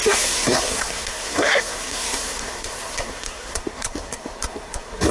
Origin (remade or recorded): remade